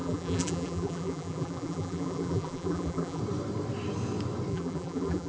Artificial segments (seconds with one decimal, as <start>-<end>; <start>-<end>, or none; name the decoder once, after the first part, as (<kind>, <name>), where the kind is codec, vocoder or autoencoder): 0.0-3.2 (vocoder, BigVGAN v2); 4.5-5.3